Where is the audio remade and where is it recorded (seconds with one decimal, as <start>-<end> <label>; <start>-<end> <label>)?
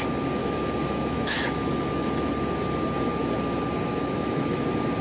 0.0-0.4 recorded; 0.4-2.3 remade; 2.3-5.0 recorded